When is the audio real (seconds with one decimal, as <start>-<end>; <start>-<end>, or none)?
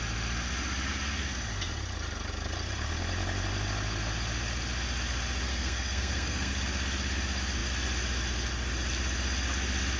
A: 0.0-5.5; 6.5-10.0